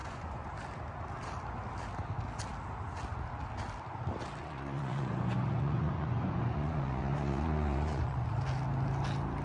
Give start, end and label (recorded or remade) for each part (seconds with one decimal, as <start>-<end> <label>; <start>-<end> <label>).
0.0-0.5 remade; 0.5-4.4 recorded; 4.4-8.3 remade; 8.3-9.4 recorded